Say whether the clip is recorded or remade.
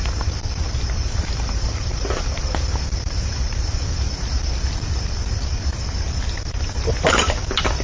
recorded